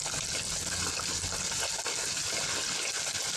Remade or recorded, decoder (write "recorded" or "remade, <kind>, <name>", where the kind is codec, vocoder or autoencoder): recorded